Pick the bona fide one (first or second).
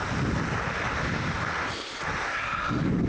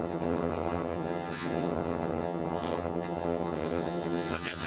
first